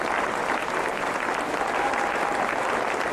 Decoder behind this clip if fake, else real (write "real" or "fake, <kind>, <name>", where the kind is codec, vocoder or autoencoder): real